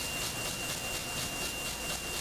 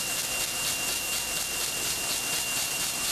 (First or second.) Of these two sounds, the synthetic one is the second